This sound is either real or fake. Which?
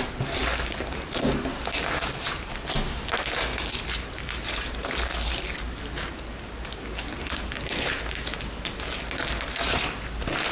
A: real